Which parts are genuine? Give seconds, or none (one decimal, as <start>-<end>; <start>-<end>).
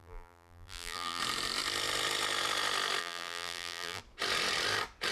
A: 1.2-3.0; 4.0-5.1